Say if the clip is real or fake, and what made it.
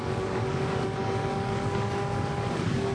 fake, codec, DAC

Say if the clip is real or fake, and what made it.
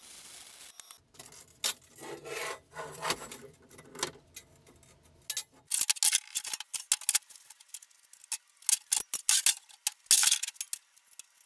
real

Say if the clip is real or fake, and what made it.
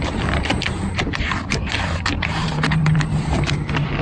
fake, vocoder, BigVGAN v2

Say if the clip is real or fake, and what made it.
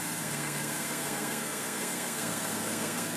fake, codec, SNAC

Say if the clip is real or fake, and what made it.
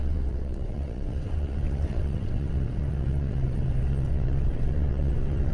fake, vocoder, WaveNeXt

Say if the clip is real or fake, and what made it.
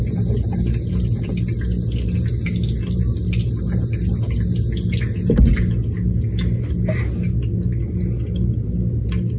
real